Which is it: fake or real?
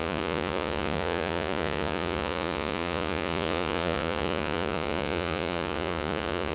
fake